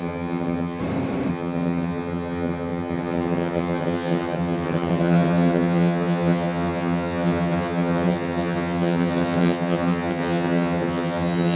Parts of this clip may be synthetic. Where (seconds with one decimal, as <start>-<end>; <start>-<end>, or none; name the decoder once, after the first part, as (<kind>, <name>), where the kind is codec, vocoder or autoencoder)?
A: 0.0-0.8 (vocoder, HiFi-GAN); 1.3-11.6